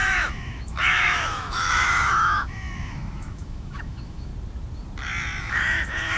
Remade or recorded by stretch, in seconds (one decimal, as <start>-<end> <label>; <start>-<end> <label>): 0.0-4.3 remade; 4.3-5.5 recorded; 5.5-6.2 remade